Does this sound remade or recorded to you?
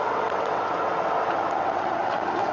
remade